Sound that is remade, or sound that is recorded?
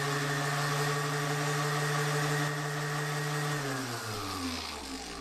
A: recorded